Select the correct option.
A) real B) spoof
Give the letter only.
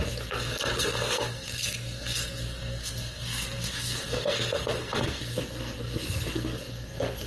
B